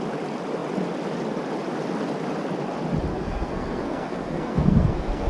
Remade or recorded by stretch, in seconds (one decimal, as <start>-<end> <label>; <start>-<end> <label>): 0.0-3.1 recorded; 3.1-5.3 remade